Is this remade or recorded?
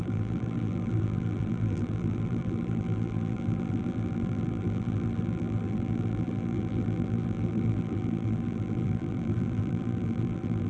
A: remade